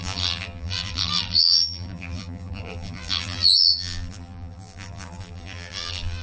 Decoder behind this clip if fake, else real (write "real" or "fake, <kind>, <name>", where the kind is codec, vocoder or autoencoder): fake, vocoder, BigVGAN v2